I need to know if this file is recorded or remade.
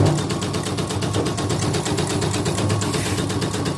recorded